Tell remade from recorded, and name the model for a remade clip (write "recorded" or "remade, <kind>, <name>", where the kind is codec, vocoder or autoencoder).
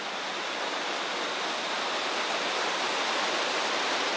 remade, vocoder, BigVGAN v2